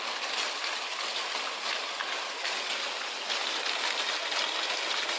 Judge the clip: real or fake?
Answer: real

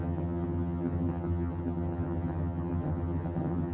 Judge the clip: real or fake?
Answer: fake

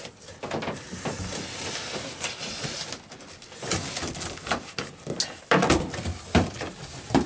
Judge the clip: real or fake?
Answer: real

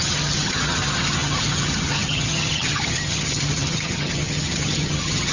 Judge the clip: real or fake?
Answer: fake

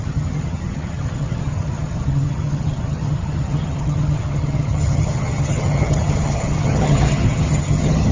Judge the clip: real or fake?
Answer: fake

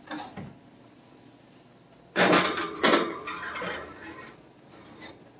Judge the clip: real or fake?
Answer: real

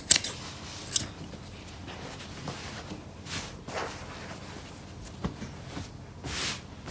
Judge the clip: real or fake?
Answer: real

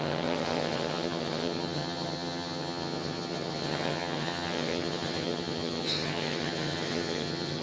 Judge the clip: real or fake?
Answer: fake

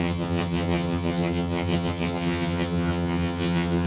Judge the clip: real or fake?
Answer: fake